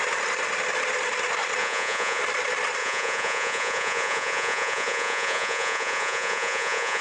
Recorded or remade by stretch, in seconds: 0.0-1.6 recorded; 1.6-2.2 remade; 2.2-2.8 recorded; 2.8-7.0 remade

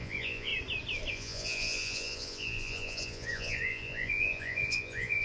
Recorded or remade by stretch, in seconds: 0.0-0.5 remade; 0.5-1.1 recorded; 1.1-5.2 remade

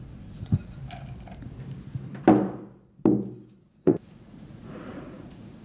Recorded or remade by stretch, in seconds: 0.0-0.8 remade; 0.8-3.6 recorded; 3.6-5.6 remade

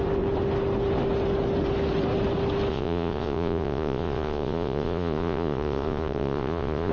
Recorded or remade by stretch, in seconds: 0.0-2.7 recorded; 2.7-6.9 remade

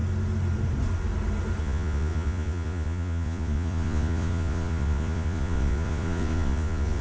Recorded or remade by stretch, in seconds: 0.0-1.6 recorded; 1.6-7.0 remade

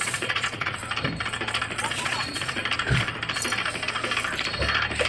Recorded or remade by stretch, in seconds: 0.0-0.8 remade; 0.8-1.9 recorded; 1.9-2.6 remade; 2.6-5.1 recorded

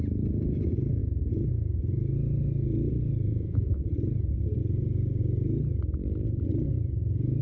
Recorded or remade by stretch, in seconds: 0.0-3.3 recorded; 3.3-3.8 remade; 3.8-7.4 recorded

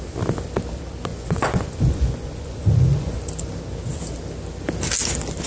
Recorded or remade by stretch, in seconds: 0.0-1.1 recorded; 1.1-3.3 remade; 3.3-5.5 recorded